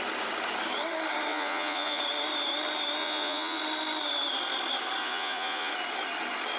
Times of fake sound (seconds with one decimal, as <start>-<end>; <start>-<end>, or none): 1.3-2.0; 3.0-3.6; 5.0-5.7